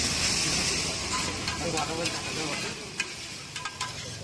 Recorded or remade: recorded